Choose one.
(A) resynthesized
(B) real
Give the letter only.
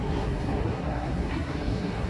A